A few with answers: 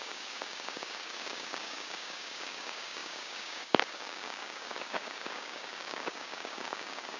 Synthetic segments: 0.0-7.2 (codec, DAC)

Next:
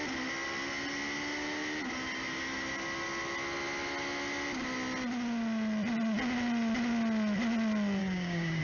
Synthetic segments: 8.0-8.6 (codec, DAC)